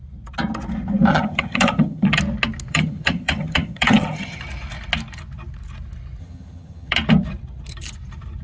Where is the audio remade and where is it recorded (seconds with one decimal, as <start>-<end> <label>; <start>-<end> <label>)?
0.0-1.1 recorded; 1.1-2.2 remade; 2.2-2.7 recorded; 2.7-4.4 remade; 4.4-6.2 recorded; 6.2-6.9 remade; 6.9-8.4 recorded